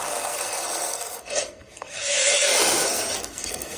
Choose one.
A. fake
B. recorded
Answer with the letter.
A